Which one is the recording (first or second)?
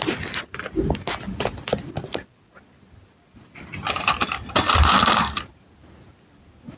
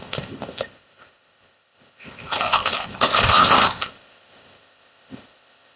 first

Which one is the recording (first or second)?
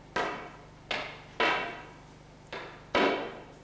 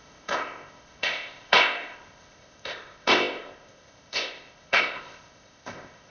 first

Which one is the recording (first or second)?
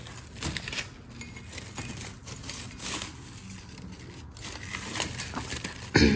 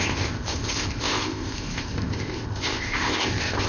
first